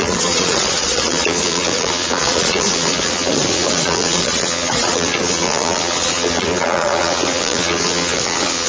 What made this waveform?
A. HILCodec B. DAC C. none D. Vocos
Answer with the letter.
D